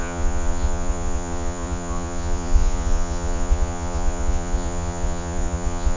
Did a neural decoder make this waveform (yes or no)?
yes